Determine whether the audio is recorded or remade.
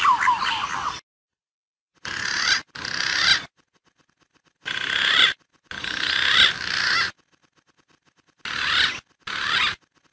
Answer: recorded